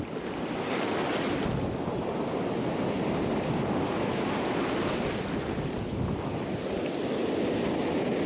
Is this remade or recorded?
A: recorded